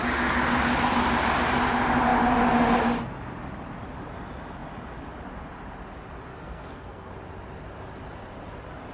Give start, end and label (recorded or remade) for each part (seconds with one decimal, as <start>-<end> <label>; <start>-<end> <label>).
0.0-6.3 recorded; 6.3-7.1 remade; 7.1-8.9 recorded